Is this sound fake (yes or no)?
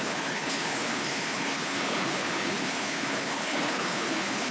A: yes